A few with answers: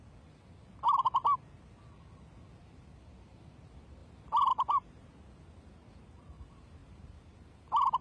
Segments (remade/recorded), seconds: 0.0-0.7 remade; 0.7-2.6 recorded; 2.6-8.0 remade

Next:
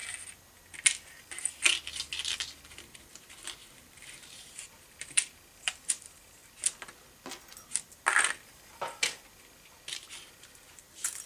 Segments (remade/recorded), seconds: 0.0-2.7 recorded; 2.7-6.4 remade; 6.4-10.4 recorded; 10.4-11.3 remade